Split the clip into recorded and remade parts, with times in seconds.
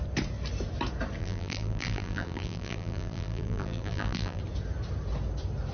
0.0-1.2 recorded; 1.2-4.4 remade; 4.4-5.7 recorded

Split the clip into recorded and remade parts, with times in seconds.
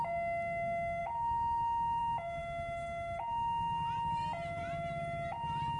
0.0-5.8 recorded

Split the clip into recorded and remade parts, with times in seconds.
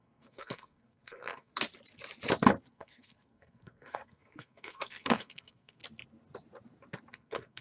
0.0-1.5 remade; 1.5-2.7 recorded; 2.7-5.8 remade; 5.8-7.1 recorded; 7.1-7.6 remade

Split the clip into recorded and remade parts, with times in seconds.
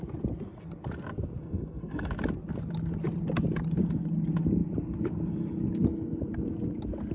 0.0-1.4 recorded; 1.4-2.1 remade; 2.1-7.1 recorded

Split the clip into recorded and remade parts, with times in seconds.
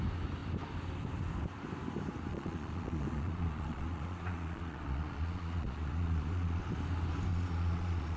0.0-2.3 recorded; 2.3-6.6 remade; 6.6-7.3 recorded; 7.3-8.2 remade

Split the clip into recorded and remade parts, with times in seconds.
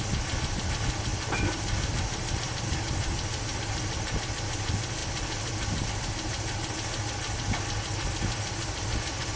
0.0-1.1 recorded; 1.1-3.6 remade; 3.6-9.4 recorded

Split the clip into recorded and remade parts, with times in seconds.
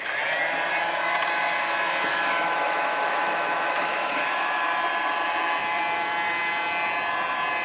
0.0-2.1 recorded; 2.1-4.6 remade; 4.6-7.6 recorded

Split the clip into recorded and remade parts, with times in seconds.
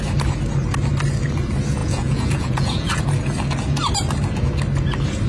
0.0-1.8 recorded; 1.8-3.0 remade; 3.0-5.3 recorded